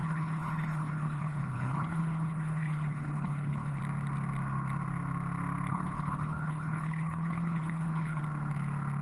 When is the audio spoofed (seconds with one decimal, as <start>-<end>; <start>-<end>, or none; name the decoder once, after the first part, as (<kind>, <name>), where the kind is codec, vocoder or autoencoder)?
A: 0.0-3.8 (codec, HILCodec); 5.7-8.2